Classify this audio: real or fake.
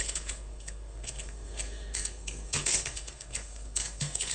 fake